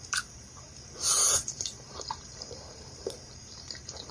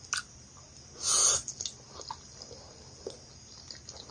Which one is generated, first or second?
first